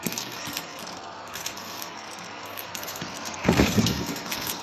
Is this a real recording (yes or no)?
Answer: no